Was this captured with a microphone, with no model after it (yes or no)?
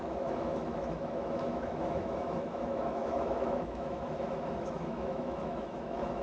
no